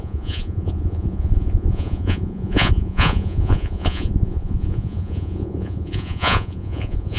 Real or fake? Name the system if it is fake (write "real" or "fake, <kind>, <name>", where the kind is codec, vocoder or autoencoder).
fake, vocoder, Vocos